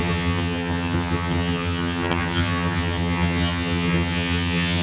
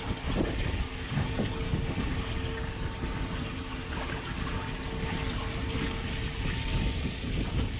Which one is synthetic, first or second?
first